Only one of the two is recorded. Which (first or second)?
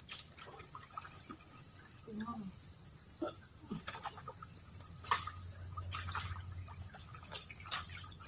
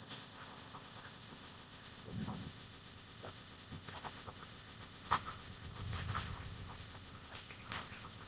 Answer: first